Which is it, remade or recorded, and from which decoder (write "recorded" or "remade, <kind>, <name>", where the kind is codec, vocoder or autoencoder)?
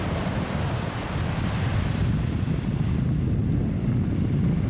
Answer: recorded